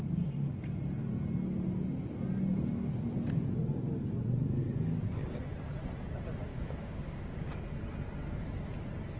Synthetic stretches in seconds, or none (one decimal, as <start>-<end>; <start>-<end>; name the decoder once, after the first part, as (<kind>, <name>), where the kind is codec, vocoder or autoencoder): 6.5-7.5 (codec, DAC)